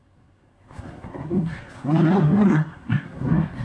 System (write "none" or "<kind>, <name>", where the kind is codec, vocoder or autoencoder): codec, SNAC